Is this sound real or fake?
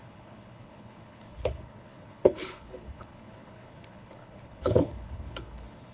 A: fake